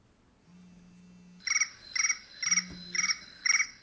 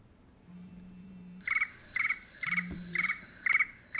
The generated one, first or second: second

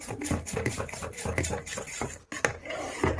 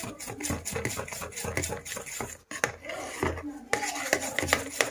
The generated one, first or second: first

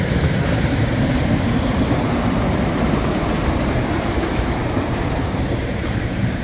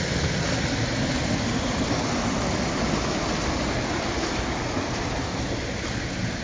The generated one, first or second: first